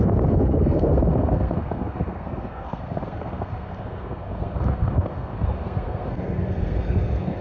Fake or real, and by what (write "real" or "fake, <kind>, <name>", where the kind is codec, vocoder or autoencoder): fake, codec, SNAC